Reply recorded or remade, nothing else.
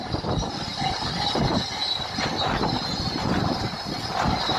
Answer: recorded